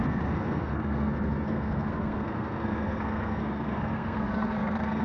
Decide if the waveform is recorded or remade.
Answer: remade